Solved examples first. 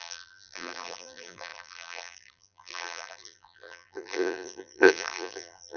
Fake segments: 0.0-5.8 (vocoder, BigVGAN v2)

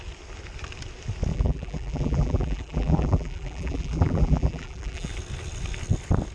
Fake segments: 1.3-5.1 (vocoder, BigVGAN v2)

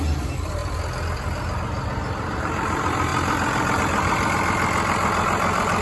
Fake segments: 0.0-0.6 (vocoder, BigVGAN v2); 2.4-3.1; 3.8-5.8

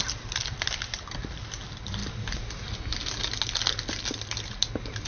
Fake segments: 0.0-2.0 (vocoder, BigVGAN v2)

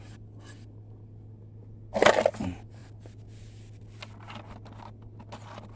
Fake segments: none

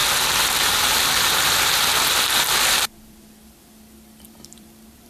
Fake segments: 2.6-5.1 (vocoder, BigVGAN v2)

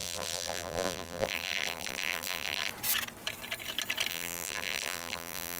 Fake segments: 0.0-2.7 (vocoder, BigVGAN v2); 4.1-5.6

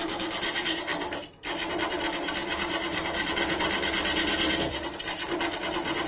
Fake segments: 0.0-0.9 (vocoder, BigVGAN v2); 1.8-6.1